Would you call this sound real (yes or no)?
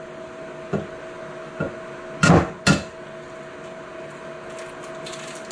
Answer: yes